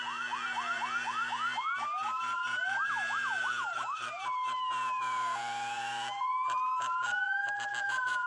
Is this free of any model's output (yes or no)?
no